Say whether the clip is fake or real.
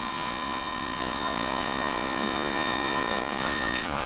fake